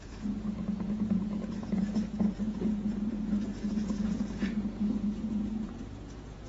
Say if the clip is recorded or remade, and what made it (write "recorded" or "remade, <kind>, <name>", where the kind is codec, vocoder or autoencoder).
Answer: remade, vocoder, Vocos